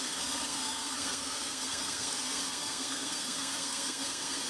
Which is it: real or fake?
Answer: fake